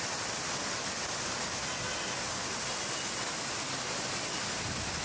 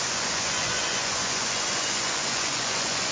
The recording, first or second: first